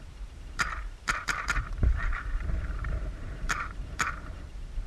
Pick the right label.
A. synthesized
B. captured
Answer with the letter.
A